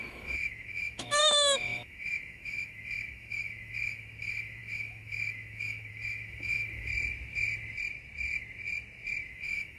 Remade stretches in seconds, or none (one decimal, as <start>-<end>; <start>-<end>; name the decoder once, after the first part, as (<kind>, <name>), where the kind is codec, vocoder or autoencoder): 0.0-6.9 (autoencoder, DAC-VAE); 9.3-9.8